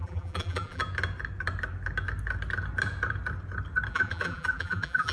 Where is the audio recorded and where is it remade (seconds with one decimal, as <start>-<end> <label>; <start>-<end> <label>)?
0.0-0.8 remade; 0.8-3.9 recorded; 3.9-5.1 remade

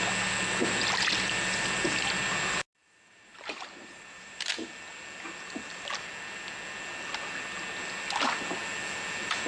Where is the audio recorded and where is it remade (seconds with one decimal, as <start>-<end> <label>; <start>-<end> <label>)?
0.0-2.8 recorded; 2.8-4.5 remade; 4.5-9.5 recorded

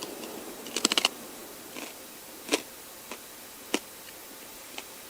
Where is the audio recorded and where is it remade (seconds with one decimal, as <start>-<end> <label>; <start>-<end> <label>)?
0.0-1.4 remade; 1.4-4.5 recorded; 4.5-5.1 remade